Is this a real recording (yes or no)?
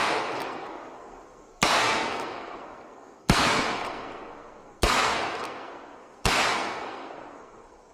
no